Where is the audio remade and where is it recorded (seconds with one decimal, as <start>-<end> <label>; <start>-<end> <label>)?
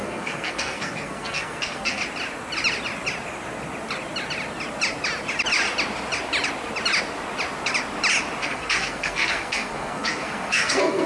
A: 0.0-2.0 remade; 2.0-8.4 recorded; 8.4-11.1 remade